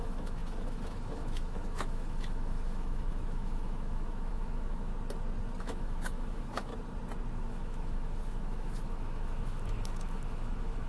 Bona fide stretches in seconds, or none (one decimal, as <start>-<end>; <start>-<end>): 4.9-5.6; 6.7-7.5